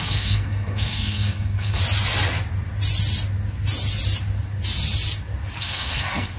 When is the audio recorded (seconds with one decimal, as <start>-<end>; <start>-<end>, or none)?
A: 1.8-5.6